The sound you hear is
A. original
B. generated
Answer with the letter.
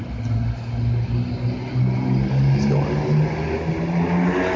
A